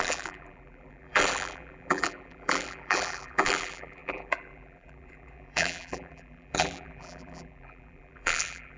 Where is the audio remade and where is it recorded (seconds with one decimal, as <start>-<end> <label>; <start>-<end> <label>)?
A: 0.0-8.8 remade